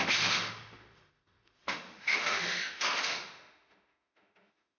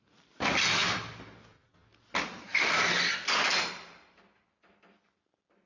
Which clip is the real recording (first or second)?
second